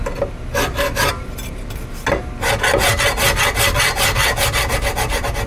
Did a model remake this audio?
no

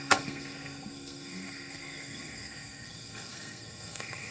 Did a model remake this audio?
yes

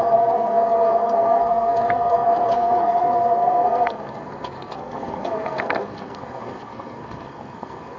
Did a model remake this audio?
yes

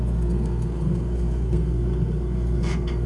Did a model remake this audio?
yes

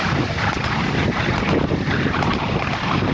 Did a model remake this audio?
no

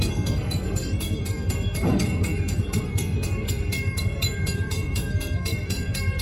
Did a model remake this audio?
yes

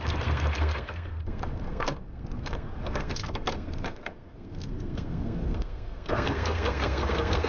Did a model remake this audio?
yes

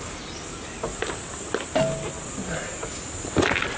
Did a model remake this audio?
no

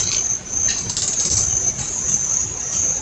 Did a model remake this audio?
no